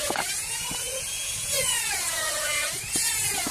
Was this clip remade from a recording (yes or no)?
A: yes